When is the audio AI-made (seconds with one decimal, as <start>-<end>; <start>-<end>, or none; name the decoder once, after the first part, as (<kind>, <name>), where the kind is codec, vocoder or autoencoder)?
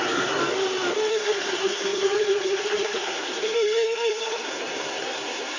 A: 0.0-0.4 (codec, SNAC); 1.1-5.6